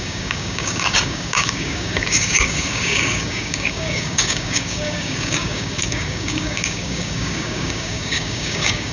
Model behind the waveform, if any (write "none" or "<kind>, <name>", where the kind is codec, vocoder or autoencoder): codec, DAC